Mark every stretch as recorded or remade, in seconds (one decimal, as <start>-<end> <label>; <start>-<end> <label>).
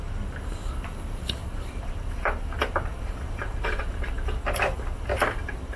0.0-1.4 recorded; 1.4-2.4 remade; 2.4-2.9 recorded; 2.9-3.8 remade; 3.8-5.8 recorded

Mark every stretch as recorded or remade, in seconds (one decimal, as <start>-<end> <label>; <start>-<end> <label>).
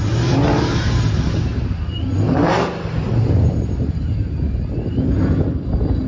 0.0-1.5 recorded; 1.5-2.9 remade; 2.9-6.1 recorded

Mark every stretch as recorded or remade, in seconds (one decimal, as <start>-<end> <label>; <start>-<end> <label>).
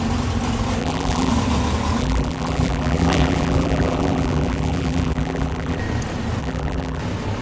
0.0-0.8 recorded; 0.8-1.3 remade; 1.3-2.0 recorded; 2.0-5.8 remade; 5.8-6.4 recorded; 6.4-7.0 remade; 7.0-7.4 recorded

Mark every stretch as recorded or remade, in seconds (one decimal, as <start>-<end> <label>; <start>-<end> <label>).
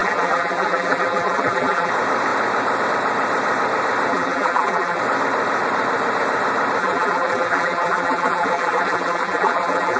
0.0-1.9 remade; 1.9-4.1 recorded; 4.1-5.0 remade; 5.0-6.8 recorded; 6.8-10.0 remade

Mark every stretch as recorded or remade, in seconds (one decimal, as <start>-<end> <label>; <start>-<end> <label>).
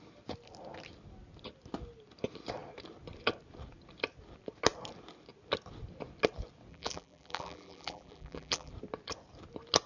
0.0-6.7 recorded; 6.7-8.7 remade; 8.7-9.9 recorded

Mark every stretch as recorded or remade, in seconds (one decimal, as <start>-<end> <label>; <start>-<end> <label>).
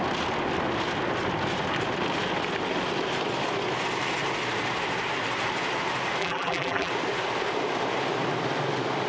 0.0-6.2 recorded; 6.2-6.9 remade; 6.9-9.1 recorded